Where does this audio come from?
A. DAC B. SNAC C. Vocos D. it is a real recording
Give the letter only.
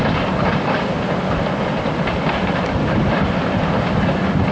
D